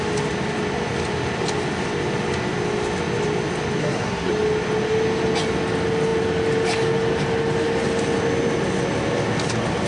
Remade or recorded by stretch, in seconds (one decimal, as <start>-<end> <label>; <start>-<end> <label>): 0.0-3.8 recorded; 3.8-4.3 remade; 4.3-9.9 recorded